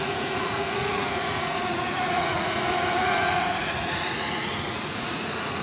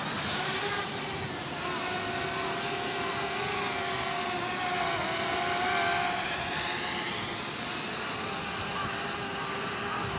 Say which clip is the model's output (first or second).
first